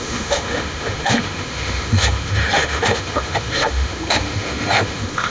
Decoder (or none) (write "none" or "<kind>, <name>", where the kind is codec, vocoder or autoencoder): autoencoder, DAC-VAE